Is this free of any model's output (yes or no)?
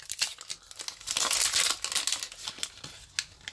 yes